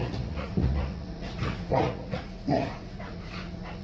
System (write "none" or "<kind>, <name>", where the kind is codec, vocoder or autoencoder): vocoder, Vocos